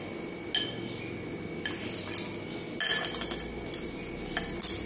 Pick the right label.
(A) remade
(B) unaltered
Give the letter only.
B